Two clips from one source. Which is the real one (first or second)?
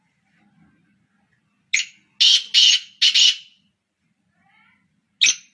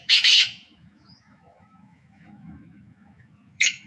first